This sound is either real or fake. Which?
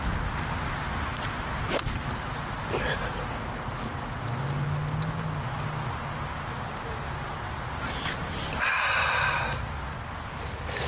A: real